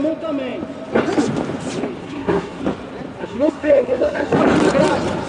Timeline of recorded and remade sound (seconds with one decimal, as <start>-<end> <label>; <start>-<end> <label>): 0.0-2.0 recorded; 2.0-2.6 remade; 2.6-3.2 recorded; 3.2-4.4 remade; 4.4-5.3 recorded